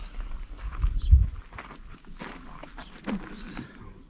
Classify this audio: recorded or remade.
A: recorded